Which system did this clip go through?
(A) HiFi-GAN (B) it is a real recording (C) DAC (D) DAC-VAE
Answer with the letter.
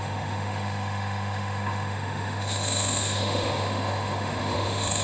D